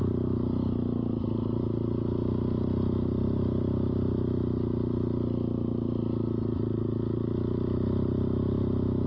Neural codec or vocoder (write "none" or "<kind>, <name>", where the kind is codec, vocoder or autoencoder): none